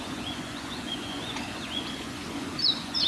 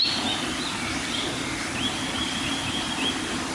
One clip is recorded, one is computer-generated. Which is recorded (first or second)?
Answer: second